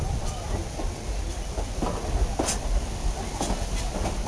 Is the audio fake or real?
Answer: real